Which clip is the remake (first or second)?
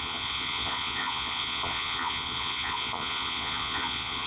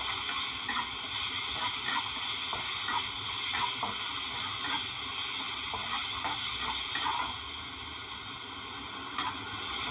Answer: first